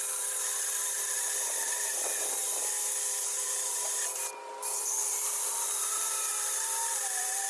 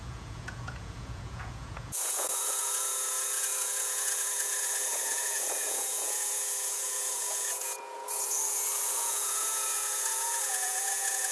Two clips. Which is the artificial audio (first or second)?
second